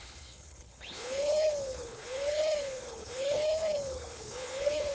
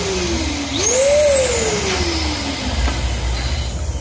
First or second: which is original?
second